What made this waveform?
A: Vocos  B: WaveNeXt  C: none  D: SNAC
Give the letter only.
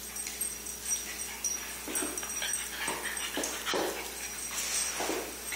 C